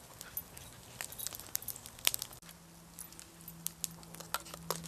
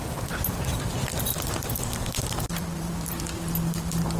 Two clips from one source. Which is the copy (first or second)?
second